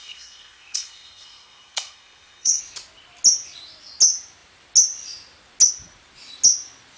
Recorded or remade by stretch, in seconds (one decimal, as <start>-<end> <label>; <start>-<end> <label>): 0.0-2.6 remade; 2.6-7.0 recorded

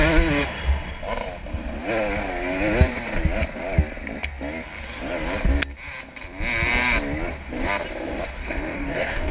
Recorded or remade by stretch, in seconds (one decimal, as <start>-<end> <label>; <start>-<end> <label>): 0.0-8.4 recorded; 8.4-9.3 remade

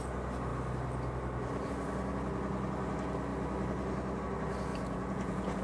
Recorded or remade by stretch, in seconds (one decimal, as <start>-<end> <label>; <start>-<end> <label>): 0.0-4.7 recorded; 4.7-5.6 remade

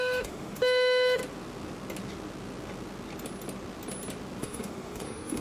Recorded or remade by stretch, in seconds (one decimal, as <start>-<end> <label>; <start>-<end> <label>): 0.0-1.2 remade; 1.2-4.4 recorded; 4.4-5.4 remade